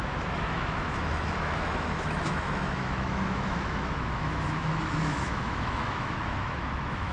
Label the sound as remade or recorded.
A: remade